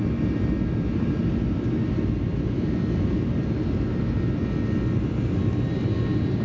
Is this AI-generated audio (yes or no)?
no